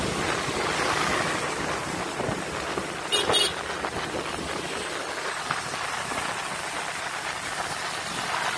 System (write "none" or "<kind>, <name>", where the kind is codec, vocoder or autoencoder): none